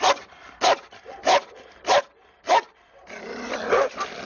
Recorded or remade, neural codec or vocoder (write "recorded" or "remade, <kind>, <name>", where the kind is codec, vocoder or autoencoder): recorded